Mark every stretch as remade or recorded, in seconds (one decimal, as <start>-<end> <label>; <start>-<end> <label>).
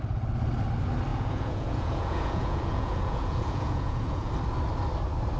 0.0-1.1 recorded; 1.1-4.3 remade; 4.3-5.4 recorded